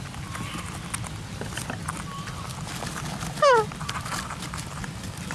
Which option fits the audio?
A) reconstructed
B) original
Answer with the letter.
B